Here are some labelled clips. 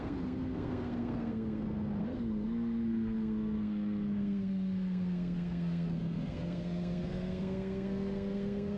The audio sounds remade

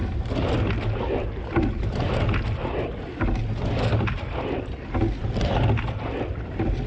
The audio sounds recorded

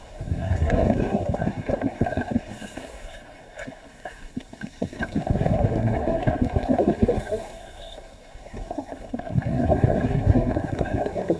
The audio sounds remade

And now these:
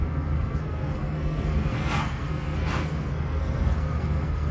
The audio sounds remade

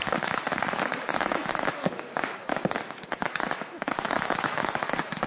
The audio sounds remade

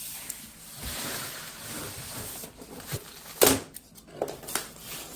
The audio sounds recorded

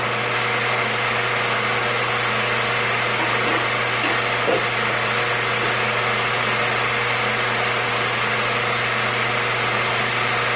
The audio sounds recorded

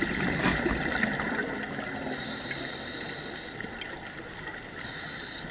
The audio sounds recorded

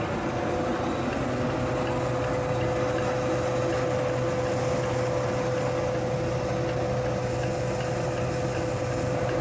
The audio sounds recorded